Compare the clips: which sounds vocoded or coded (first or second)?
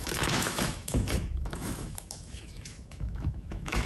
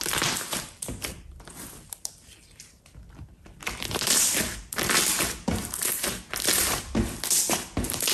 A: first